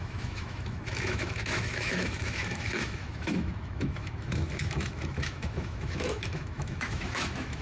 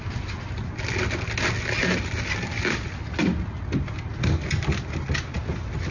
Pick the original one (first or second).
second